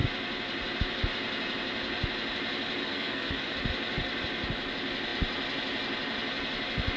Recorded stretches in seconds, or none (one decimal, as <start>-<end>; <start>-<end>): 0.0-2.8; 3.5-7.0